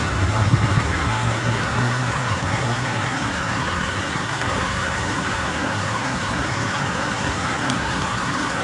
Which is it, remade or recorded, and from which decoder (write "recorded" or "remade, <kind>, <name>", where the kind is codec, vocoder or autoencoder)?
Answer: remade, codec, SNAC